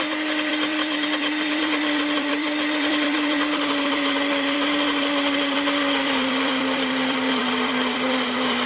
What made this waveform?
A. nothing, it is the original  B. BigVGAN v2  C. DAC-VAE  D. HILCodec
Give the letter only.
B